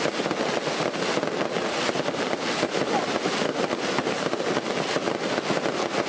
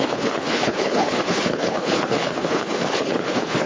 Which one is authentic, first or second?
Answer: first